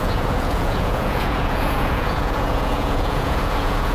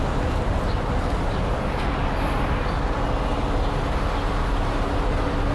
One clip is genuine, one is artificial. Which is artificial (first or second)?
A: first